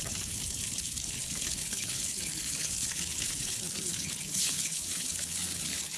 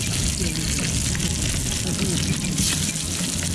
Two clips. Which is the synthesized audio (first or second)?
first